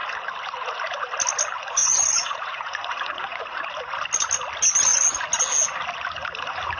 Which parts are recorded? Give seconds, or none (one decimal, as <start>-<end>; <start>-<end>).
0.0-1.8; 3.6-6.8